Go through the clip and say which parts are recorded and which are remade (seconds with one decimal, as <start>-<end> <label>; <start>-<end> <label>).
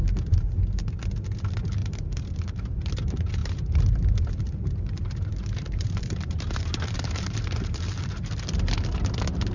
0.0-1.0 remade; 1.0-1.8 recorded; 1.8-2.8 remade; 2.8-3.4 recorded; 3.4-8.5 remade; 8.5-9.5 recorded